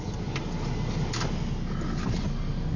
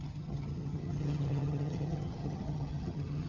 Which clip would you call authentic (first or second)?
first